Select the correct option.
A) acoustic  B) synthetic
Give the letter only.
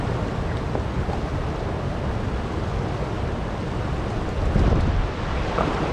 A